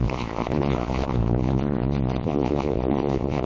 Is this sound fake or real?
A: fake